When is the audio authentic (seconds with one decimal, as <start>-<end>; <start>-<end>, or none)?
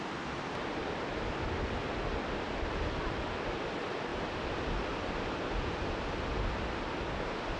0.0-7.6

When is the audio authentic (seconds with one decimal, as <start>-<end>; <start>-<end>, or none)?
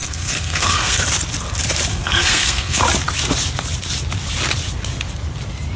1.0-1.9; 2.8-5.8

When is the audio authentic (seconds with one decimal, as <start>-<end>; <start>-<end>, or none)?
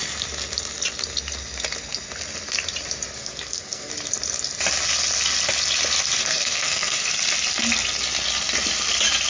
0.0-3.2; 3.9-6.2; 7.1-9.3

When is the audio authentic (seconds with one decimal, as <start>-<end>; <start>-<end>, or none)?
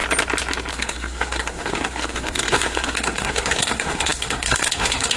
0.0-0.7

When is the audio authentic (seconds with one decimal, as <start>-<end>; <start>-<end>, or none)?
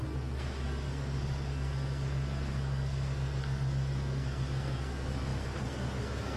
none